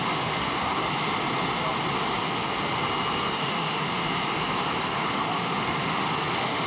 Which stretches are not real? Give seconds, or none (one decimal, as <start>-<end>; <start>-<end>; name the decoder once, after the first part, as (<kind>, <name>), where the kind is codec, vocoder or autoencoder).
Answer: 0.0-0.8 (autoencoder, DAC-VAE); 3.4-3.9; 5.0-6.7